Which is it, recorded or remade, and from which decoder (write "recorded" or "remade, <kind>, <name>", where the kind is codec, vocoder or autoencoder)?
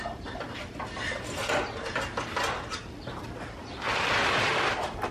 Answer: recorded